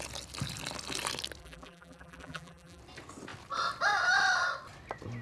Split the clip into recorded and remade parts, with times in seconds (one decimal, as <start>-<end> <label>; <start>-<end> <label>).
0.0-1.4 recorded; 1.4-2.8 remade; 2.8-5.2 recorded